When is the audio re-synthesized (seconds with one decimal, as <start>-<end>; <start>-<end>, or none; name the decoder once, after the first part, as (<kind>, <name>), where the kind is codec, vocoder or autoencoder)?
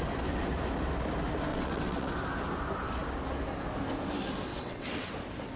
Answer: 1.5-2.1 (vocoder, WaveNeXt); 4.5-5.1